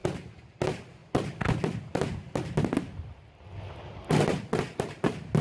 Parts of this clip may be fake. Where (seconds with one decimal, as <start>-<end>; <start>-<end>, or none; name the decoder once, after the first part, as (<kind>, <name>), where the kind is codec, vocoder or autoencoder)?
none